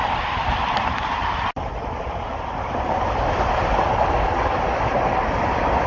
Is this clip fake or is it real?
real